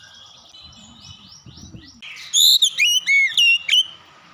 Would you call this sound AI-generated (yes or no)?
no